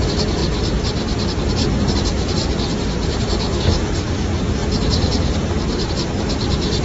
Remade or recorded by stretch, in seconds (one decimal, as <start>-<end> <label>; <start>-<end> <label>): 0.0-6.8 recorded

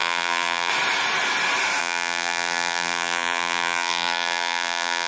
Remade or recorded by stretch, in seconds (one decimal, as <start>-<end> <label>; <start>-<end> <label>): 0.0-0.7 remade; 0.7-1.8 recorded; 1.8-5.1 remade

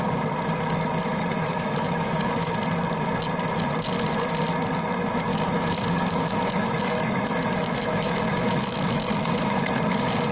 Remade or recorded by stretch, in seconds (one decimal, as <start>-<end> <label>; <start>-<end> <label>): 0.0-1.1 recorded; 1.1-2.5 remade; 2.5-5.3 recorded; 5.3-9.7 remade; 9.7-10.3 recorded

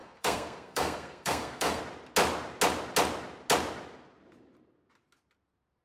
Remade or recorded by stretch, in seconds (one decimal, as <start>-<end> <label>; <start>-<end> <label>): 0.0-1.8 remade; 1.8-5.8 recorded

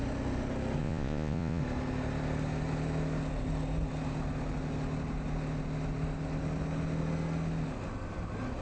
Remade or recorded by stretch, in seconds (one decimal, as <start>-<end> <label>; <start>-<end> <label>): 0.0-0.8 recorded; 0.8-1.6 remade; 1.6-8.6 recorded

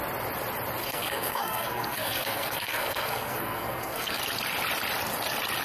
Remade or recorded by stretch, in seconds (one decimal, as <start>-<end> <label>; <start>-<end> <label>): 0.0-0.8 recorded; 0.8-4.2 remade; 4.2-5.6 recorded